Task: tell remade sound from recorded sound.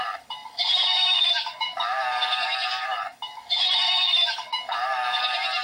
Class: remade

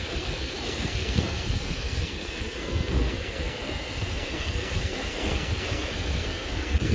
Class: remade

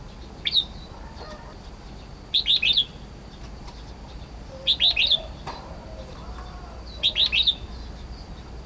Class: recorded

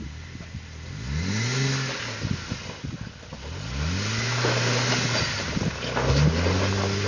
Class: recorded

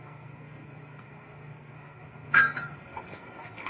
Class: remade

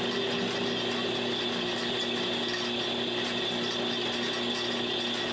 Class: recorded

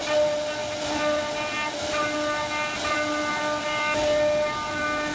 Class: recorded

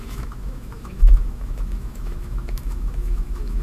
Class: remade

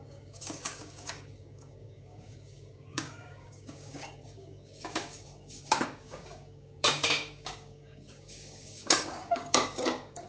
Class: remade